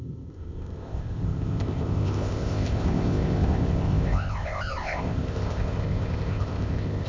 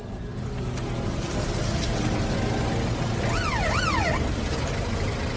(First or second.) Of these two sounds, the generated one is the first